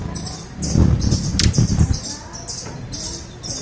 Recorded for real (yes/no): yes